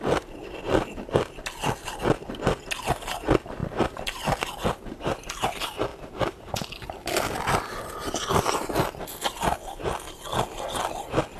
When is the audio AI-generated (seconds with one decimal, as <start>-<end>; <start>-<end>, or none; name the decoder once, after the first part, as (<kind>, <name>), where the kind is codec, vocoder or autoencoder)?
3.6-5.3 (vocoder, BigVGAN v2)

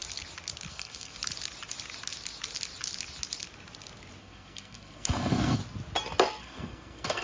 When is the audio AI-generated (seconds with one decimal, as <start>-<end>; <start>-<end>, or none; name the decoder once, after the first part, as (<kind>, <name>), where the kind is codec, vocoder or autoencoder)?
0.7-1.2 (codec, SNAC); 4.2-5.6; 6.4-7.2